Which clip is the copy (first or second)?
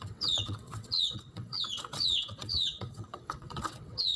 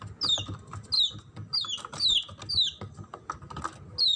first